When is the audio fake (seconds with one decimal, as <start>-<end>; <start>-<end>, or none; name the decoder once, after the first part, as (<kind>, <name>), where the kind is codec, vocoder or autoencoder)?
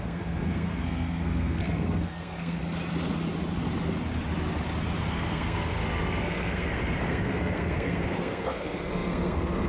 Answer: 0.0-2.6 (codec, SNAC); 5.1-9.7